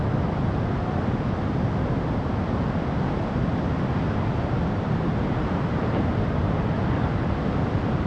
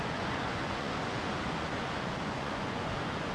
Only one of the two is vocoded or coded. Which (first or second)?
second